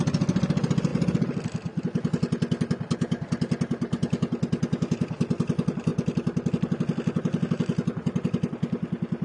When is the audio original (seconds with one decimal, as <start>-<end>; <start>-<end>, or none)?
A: 0.0-9.2